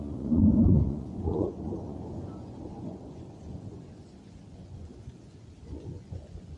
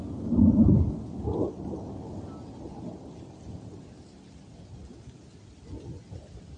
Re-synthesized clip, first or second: first